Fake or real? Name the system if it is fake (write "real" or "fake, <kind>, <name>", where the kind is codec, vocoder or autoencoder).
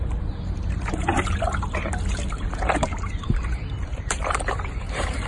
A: fake, vocoder, BigVGAN v2